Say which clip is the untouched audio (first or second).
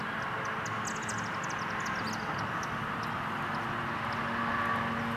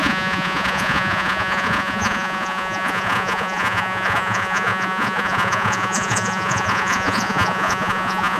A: first